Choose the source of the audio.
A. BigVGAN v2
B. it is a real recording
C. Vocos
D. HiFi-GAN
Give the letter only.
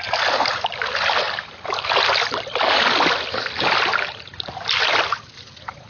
B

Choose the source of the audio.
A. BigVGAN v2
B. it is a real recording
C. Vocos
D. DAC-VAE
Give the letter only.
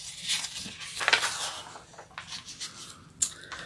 B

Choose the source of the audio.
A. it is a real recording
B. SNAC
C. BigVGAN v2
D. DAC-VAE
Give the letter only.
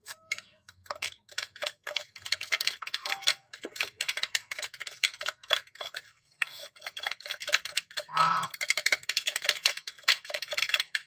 B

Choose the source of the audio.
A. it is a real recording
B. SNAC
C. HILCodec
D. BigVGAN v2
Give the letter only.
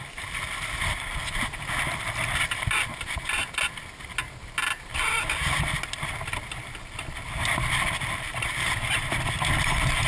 A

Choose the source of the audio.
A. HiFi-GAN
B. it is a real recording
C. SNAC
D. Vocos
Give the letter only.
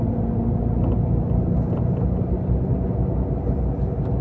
B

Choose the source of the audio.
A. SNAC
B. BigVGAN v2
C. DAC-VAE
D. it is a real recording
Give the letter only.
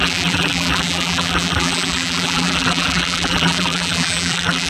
B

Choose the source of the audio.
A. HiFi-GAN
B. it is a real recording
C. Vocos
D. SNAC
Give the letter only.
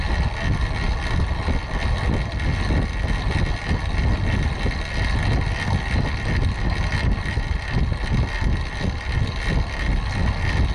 B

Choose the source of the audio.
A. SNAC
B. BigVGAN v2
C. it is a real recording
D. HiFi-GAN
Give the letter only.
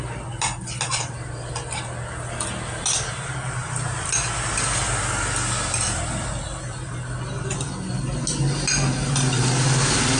C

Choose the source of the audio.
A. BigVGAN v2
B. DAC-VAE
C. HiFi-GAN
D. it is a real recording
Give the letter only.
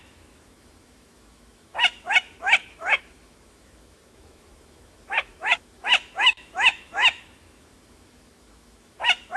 B